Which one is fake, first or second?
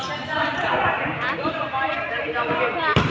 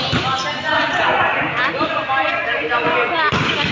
first